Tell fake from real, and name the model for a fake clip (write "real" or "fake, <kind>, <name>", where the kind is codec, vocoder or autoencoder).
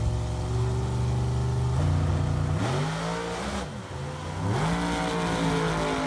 real